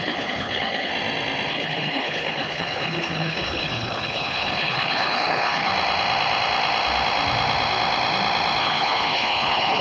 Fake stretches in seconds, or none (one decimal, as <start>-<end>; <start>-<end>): 0.0-0.9; 1.5-5.7; 8.6-9.8